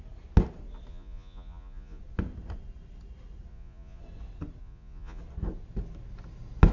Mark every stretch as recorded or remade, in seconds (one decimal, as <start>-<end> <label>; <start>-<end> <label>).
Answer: 0.0-0.9 recorded; 0.9-2.0 remade; 2.0-3.5 recorded; 3.5-4.0 remade; 4.0-4.6 recorded; 4.6-5.2 remade; 5.2-6.7 recorded